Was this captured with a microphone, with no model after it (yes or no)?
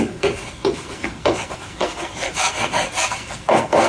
no